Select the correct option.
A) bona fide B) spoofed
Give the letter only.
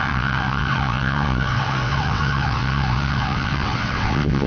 B